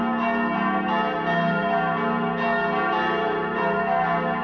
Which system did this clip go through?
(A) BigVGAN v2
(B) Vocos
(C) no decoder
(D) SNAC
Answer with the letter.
C